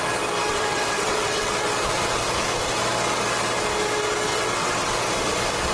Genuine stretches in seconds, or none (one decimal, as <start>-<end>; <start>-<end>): 0.0-0.4; 1.5-4.3; 4.9-5.7